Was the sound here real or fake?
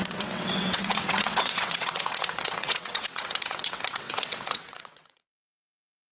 fake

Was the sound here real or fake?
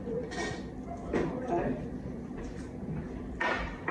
real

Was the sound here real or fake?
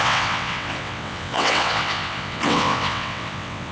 fake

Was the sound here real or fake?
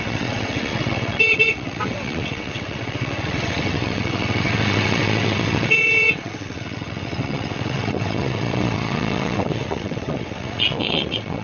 fake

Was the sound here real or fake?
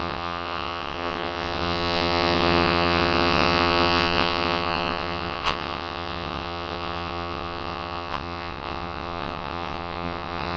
fake